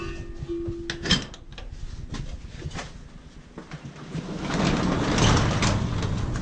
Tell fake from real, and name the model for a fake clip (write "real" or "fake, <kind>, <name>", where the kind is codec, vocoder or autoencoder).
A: real